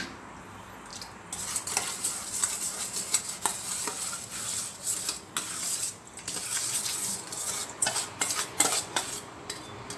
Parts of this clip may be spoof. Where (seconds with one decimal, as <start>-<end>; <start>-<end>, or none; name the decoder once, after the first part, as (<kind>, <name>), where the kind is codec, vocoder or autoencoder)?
6.6-9.6 (vocoder, Vocos)